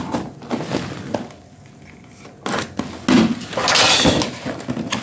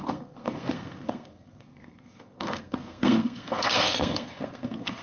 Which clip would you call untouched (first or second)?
first